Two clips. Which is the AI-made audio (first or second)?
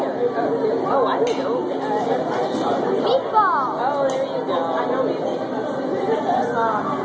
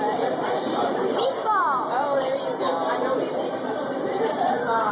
second